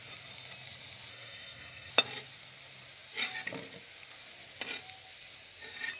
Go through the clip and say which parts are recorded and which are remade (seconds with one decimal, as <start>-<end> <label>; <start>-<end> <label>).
0.0-1.1 recorded; 1.1-1.9 remade; 1.9-6.0 recorded